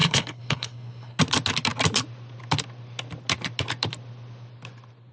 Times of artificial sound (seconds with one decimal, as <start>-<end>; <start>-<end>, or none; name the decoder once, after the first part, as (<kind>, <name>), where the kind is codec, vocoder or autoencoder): 0.0-1.2 (codec, HILCodec)